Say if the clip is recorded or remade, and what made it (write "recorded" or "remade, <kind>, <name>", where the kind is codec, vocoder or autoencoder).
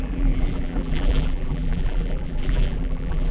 remade, vocoder, BigVGAN v2